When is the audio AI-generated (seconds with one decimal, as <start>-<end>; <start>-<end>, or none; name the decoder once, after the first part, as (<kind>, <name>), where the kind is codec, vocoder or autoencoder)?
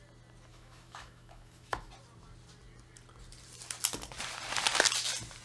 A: 0.5-1.9 (autoencoder, DAC-VAE)